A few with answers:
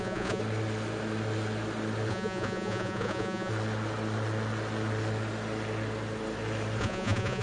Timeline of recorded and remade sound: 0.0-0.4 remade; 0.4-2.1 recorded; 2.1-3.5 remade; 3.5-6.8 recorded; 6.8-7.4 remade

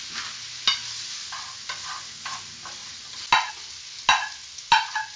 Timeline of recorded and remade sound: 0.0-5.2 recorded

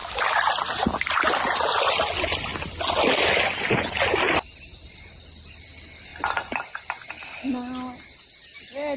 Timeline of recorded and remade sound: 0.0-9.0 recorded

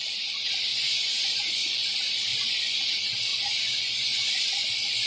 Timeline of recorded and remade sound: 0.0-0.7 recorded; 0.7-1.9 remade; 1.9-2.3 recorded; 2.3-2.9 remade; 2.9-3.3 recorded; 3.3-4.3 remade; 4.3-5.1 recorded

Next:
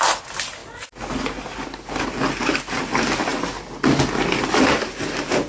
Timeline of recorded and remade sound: 0.0-5.5 recorded

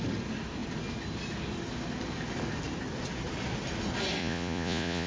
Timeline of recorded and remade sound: 0.0-4.2 recorded; 4.2-5.1 remade